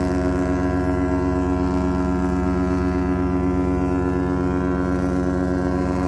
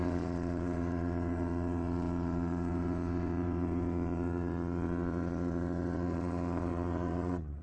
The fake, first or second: second